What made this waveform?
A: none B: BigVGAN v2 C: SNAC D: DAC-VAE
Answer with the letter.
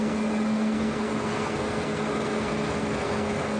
C